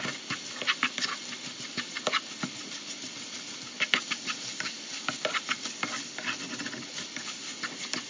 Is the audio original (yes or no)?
yes